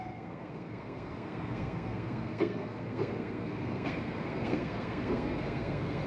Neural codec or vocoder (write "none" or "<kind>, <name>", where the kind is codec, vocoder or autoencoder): codec, SNAC